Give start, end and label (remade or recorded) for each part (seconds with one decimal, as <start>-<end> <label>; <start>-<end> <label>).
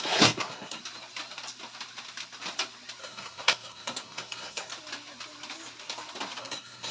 0.0-0.8 remade; 0.8-3.0 recorded; 3.0-4.7 remade; 4.7-6.4 recorded; 6.4-6.9 remade